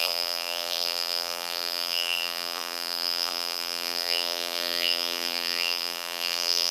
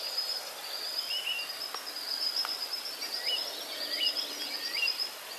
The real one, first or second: second